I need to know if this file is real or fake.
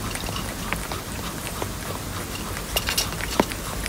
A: real